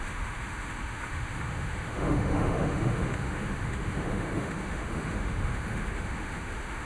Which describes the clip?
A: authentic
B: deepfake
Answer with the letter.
B